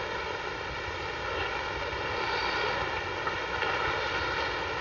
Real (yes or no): yes